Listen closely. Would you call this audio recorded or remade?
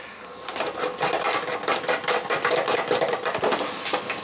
recorded